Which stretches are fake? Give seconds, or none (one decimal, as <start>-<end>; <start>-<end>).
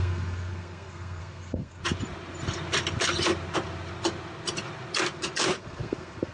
0.0-1.8; 5.6-6.3